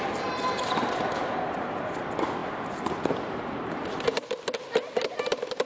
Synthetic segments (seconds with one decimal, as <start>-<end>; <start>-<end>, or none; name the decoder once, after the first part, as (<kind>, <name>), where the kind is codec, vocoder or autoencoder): none